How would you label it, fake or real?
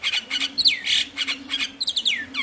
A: fake